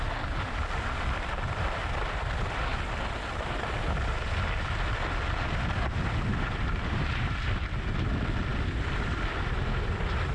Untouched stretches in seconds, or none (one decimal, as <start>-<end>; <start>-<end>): 0.0-10.3